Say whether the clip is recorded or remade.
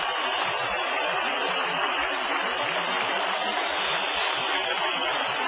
remade